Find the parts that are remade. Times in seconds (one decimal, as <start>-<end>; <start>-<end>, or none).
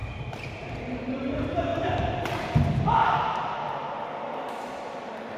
none